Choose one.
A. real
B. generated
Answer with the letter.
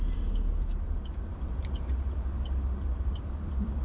B